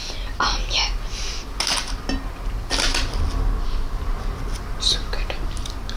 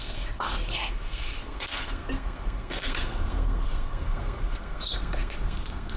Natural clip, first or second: first